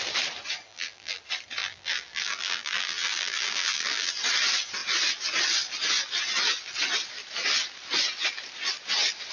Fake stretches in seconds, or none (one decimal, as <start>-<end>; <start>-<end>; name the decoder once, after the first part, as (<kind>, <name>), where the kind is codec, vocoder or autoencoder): 0.7-1.2 (vocoder, BigVGAN v2); 1.6-4.1